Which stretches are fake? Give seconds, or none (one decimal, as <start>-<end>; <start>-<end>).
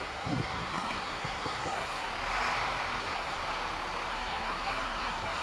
0.0-2.1; 3.0-3.4; 4.1-5.4